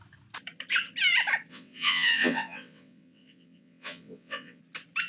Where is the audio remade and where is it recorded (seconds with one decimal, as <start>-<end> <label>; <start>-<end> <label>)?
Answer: 0.0-1.5 recorded; 1.5-4.6 remade; 4.6-5.1 recorded

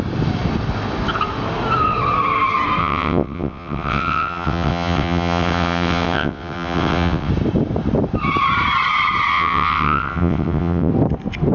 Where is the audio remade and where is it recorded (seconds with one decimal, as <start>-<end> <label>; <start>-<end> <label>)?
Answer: 0.0-2.8 recorded; 2.8-7.3 remade; 7.3-9.3 recorded; 9.3-10.9 remade; 10.9-11.5 recorded

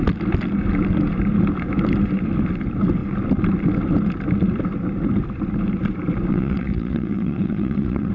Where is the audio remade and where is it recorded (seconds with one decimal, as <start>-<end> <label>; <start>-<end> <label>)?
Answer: 0.0-6.3 recorded; 6.3-8.1 remade

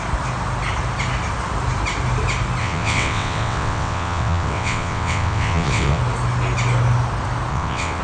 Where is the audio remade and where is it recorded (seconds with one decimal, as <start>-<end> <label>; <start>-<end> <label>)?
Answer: 0.0-2.6 recorded; 2.6-6.0 remade; 6.0-7.5 recorded; 7.5-8.0 remade

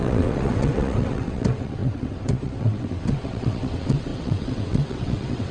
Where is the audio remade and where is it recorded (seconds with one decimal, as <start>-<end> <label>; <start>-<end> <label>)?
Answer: 0.0-5.5 remade

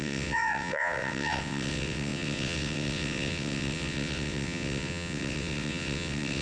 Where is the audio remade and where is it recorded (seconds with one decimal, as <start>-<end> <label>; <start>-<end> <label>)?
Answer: 0.0-6.4 remade

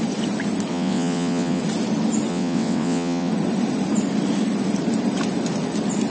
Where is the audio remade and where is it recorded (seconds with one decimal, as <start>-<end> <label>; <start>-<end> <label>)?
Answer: 0.0-0.7 recorded; 0.7-1.6 remade; 1.6-2.3 recorded; 2.3-3.3 remade; 3.3-6.1 recorded